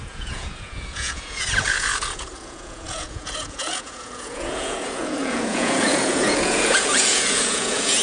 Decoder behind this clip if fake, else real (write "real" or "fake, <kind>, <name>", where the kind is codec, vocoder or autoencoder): fake, vocoder, Vocos